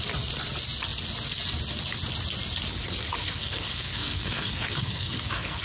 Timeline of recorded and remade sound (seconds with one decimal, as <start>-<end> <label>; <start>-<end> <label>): 0.0-3.2 recorded; 3.2-5.6 remade